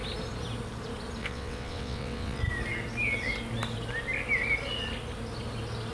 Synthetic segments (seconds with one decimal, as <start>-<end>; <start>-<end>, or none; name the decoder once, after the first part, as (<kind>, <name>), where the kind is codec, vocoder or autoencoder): 1.2-2.4 (vocoder, WaveNeXt)